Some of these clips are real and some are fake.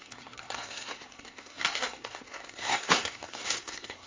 fake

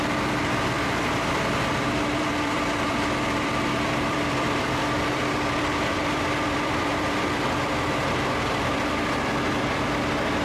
fake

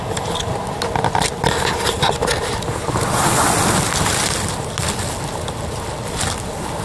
real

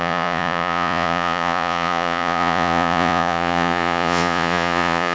fake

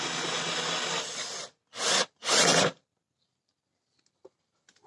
real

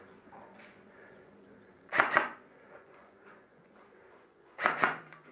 fake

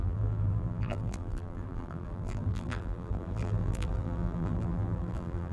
fake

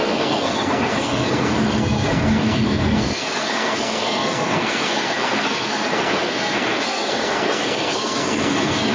fake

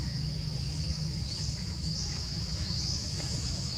fake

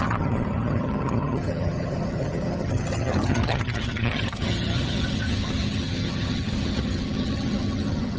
fake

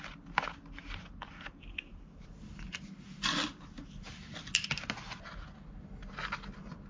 real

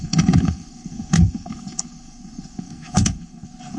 fake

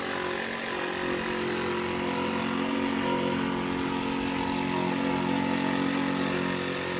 real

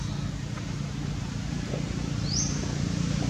real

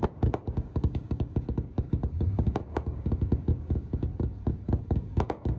fake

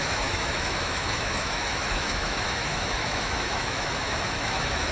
fake